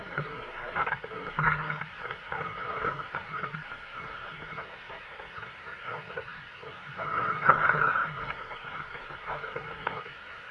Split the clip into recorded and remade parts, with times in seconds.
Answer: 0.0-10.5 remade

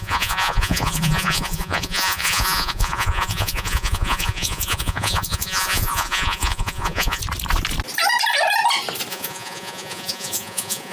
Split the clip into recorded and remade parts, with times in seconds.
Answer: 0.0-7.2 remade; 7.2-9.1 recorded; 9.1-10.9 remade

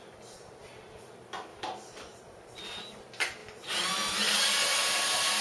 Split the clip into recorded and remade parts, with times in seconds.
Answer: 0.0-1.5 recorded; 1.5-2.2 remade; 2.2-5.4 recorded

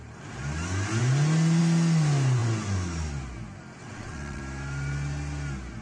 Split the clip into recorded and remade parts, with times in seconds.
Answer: 0.0-3.8 recorded; 3.8-4.4 remade; 4.4-5.8 recorded

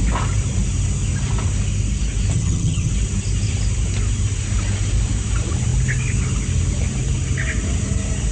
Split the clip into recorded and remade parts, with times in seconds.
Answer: 0.0-2.3 recorded; 2.3-2.9 remade; 2.9-8.3 recorded

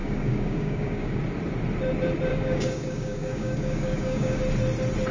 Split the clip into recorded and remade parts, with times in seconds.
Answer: 0.0-1.2 remade; 1.2-2.3 recorded; 2.3-4.4 remade; 4.4-5.1 recorded

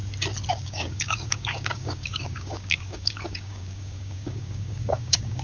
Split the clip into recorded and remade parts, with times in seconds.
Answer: 0.0-0.5 recorded; 0.5-5.4 remade

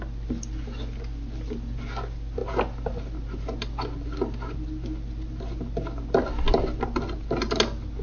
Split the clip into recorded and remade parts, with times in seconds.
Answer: 0.0-8.0 recorded